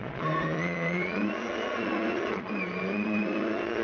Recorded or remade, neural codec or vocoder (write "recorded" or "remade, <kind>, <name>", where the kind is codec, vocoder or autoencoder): remade, vocoder, Vocos